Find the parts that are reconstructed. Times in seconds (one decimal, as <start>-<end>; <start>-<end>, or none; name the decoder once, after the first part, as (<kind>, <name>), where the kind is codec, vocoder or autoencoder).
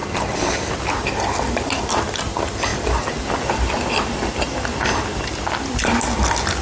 none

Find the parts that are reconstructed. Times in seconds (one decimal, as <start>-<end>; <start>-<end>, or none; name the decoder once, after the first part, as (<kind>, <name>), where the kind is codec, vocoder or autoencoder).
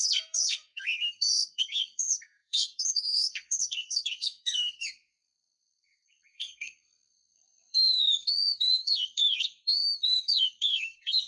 0.0-11.3 (codec, SNAC)